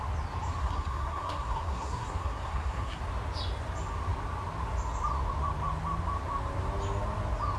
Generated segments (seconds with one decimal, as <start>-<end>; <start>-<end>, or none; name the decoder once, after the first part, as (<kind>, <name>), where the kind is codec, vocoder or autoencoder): 0.6-3.0 (codec, SNAC)